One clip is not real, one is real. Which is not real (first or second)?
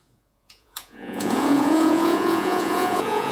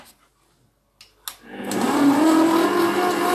first